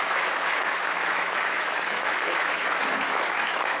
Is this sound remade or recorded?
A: remade